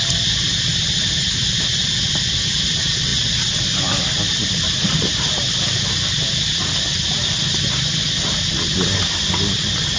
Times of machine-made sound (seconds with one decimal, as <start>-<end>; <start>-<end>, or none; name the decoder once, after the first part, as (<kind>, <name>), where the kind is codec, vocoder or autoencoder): none